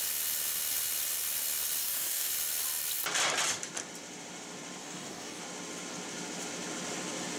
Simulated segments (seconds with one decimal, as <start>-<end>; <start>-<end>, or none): 1.8-2.3; 4.8-5.4